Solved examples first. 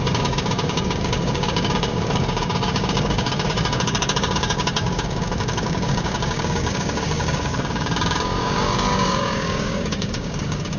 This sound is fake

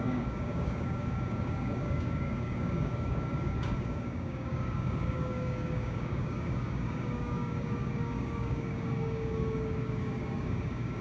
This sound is fake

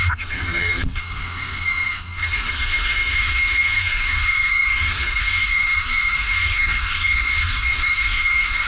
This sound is fake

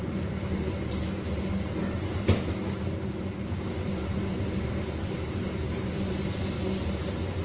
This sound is real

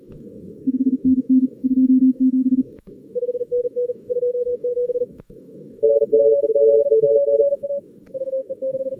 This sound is fake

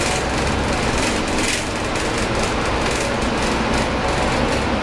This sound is real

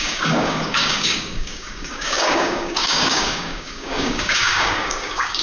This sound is fake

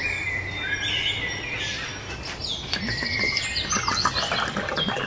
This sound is real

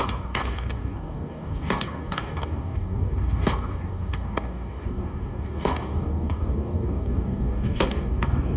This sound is fake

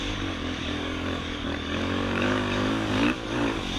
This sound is fake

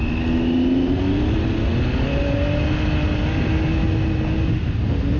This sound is real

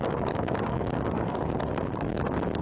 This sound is fake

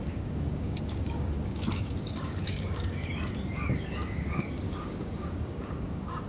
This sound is fake